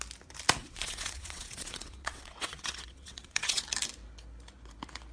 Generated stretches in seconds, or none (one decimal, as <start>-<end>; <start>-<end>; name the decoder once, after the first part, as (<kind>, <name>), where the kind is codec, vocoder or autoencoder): 0.6-3.6 (vocoder, WaveNeXt)